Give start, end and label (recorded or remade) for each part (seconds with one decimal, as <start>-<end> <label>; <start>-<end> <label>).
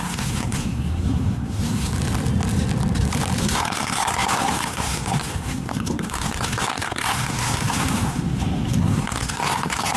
0.0-1.9 remade; 1.9-3.4 recorded; 3.4-10.0 remade